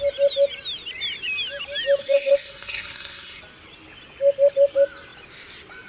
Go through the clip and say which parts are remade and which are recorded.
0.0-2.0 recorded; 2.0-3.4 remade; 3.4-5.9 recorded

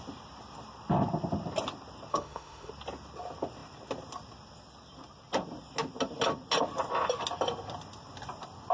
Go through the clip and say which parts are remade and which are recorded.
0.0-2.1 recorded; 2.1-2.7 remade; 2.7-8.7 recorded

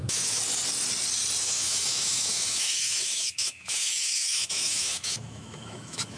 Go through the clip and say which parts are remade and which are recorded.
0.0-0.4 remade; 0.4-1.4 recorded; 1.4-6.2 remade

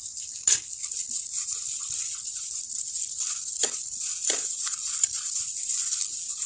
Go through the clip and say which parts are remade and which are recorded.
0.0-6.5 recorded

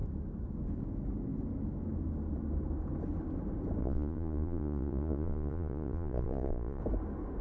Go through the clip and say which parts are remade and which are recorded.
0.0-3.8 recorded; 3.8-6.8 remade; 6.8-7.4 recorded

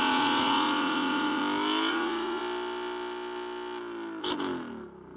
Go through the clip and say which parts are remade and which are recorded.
0.0-1.4 remade; 1.4-1.9 recorded; 1.9-2.4 remade; 2.4-5.2 recorded

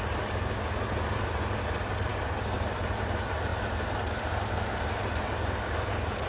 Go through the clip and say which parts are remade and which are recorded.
0.0-2.1 recorded; 2.1-2.8 remade; 2.8-6.3 recorded

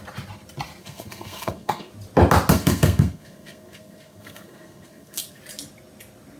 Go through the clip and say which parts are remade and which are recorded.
0.0-0.8 recorded; 0.8-1.9 remade; 1.9-2.5 recorded; 2.5-5.4 remade; 5.4-6.4 recorded